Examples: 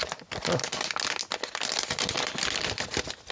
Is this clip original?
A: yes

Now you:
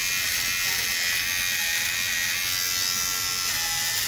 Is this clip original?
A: yes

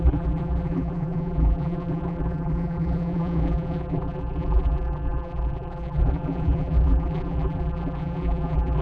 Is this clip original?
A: no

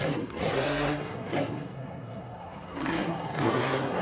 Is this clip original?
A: no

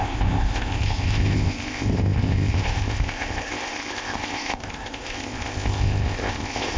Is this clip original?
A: no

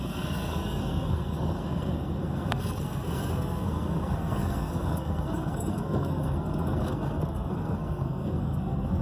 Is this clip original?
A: no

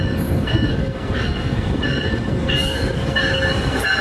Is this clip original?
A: no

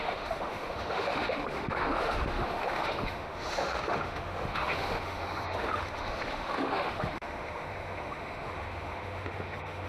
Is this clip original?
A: no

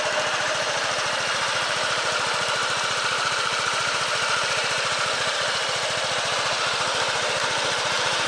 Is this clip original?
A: no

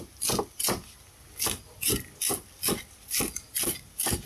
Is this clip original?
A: yes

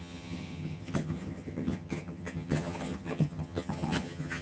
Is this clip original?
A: no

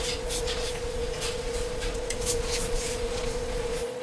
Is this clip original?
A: no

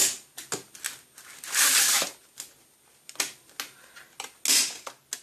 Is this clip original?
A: yes